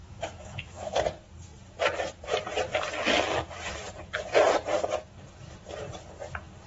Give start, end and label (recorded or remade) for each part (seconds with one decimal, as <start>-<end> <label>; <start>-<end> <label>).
0.0-1.0 remade; 1.0-6.7 recorded